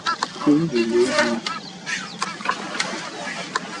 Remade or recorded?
recorded